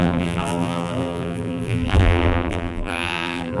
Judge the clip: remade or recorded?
remade